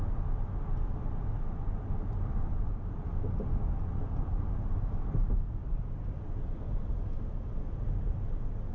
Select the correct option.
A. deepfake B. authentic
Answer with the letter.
B